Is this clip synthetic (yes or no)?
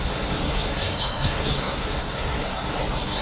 yes